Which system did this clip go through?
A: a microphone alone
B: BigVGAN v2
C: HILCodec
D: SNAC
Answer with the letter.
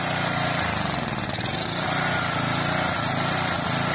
A